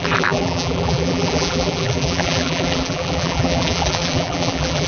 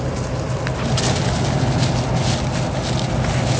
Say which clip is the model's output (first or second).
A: first